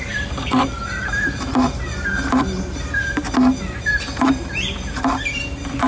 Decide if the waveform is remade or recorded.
recorded